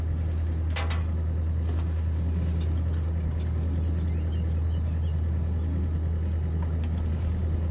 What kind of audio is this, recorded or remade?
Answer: recorded